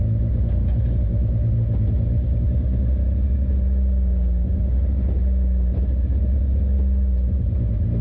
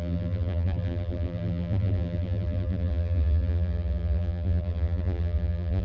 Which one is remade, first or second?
second